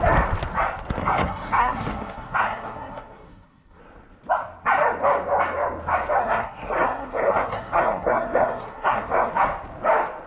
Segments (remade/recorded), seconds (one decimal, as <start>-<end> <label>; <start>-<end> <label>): 0.0-1.0 recorded; 1.0-3.8 remade; 3.8-6.2 recorded; 6.2-9.3 remade; 9.3-10.3 recorded